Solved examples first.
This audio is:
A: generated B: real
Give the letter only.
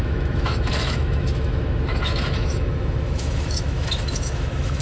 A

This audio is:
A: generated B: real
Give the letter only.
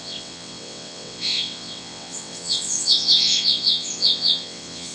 A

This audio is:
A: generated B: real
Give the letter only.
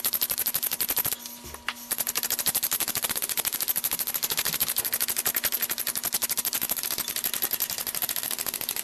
B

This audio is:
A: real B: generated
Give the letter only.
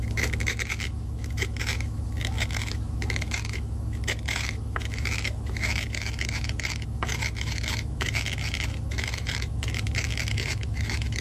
B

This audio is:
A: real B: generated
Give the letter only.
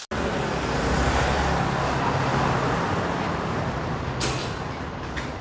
A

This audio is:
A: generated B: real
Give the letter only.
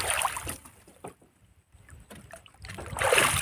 B